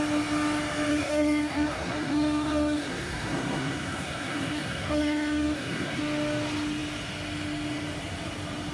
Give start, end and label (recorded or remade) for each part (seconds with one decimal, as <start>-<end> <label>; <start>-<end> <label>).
0.0-0.9 recorded; 0.9-6.0 remade; 6.0-8.7 recorded